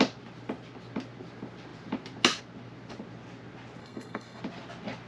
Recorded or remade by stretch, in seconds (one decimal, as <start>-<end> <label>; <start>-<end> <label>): 0.0-3.8 recorded; 3.8-4.4 remade; 4.4-5.1 recorded

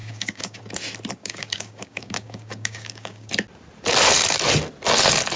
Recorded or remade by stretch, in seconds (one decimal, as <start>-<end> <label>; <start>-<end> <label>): 0.0-0.6 remade; 0.6-1.2 recorded; 1.2-3.3 remade; 3.3-5.4 recorded